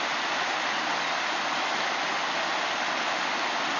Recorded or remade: recorded